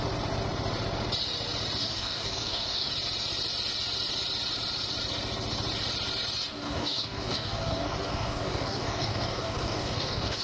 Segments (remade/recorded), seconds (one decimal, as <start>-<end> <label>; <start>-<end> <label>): 0.0-1.8 recorded; 1.8-2.9 remade; 2.9-6.5 recorded; 6.5-10.4 remade